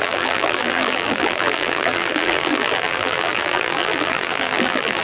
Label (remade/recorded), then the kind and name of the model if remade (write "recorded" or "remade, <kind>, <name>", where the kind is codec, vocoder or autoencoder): remade, vocoder, BigVGAN v2